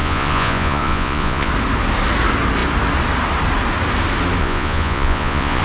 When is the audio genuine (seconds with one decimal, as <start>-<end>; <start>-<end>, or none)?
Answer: 1.5-4.4